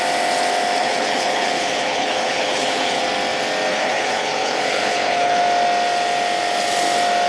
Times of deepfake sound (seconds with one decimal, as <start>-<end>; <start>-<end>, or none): 0.8-3.0; 3.7-5.4